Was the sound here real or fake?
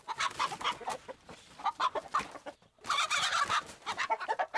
real